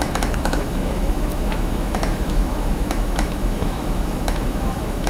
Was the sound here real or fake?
fake